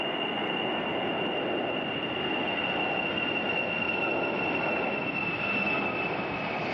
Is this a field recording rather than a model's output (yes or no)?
yes